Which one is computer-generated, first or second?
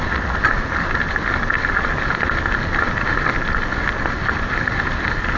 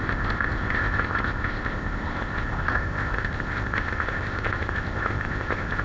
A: second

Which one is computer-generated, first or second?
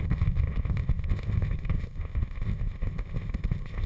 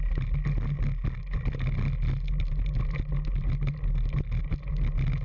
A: first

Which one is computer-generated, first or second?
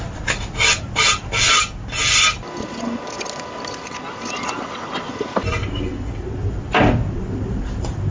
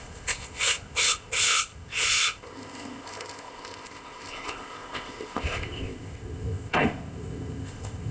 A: second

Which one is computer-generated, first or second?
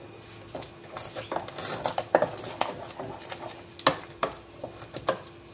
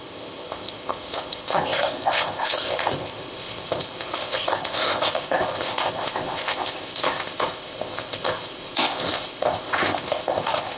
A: second